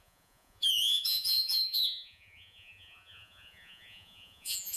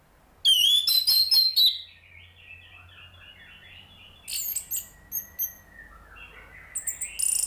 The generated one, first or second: first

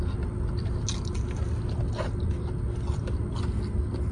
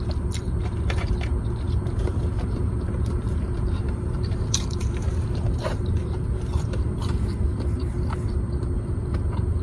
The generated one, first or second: second